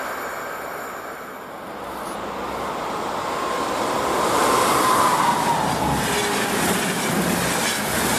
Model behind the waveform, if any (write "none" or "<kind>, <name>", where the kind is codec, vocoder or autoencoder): none